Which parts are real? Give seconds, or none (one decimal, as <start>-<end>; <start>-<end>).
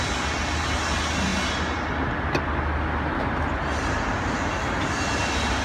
0.0-5.6